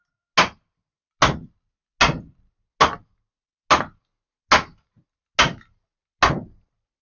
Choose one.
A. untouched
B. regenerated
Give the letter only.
A